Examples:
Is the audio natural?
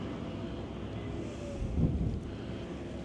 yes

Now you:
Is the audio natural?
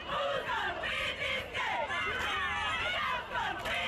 no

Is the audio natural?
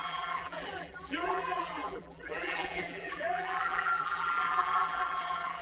no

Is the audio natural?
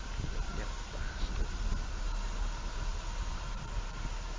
no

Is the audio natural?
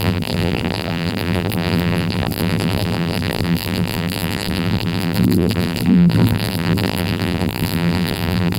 no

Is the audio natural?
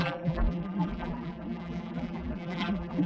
no